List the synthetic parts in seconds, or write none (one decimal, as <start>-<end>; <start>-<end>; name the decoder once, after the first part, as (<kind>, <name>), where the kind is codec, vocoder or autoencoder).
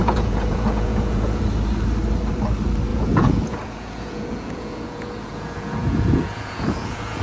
0.0-1.4 (vocoder, Vocos); 2.9-7.2